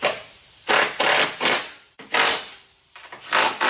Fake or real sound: real